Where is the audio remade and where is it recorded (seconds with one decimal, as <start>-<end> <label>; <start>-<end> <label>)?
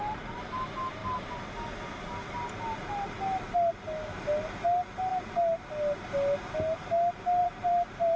0.0-5.1 recorded; 5.1-5.7 remade; 5.7-7.4 recorded; 7.4-8.2 remade